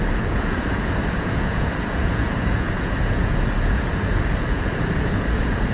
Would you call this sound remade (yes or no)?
yes